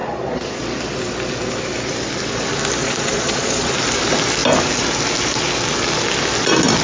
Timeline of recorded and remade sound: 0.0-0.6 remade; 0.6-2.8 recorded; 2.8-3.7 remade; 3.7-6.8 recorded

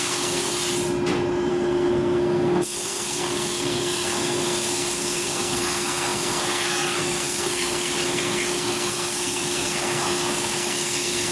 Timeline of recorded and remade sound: 0.0-0.5 remade; 0.5-1.5 recorded; 1.5-11.3 remade

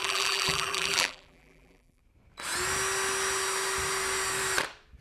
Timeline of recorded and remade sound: 0.0-2.0 remade; 2.0-5.0 recorded

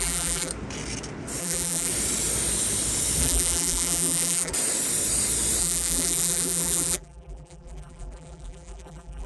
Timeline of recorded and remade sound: 0.0-0.5 remade; 0.5-1.4 recorded; 1.4-1.9 remade; 1.9-3.2 recorded; 3.2-4.5 remade; 4.5-5.6 recorded; 5.6-9.3 remade